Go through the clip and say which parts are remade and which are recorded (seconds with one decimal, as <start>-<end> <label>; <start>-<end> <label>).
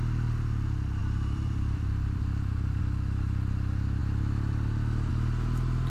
0.0-1.0 recorded; 1.0-2.8 remade; 2.8-5.9 recorded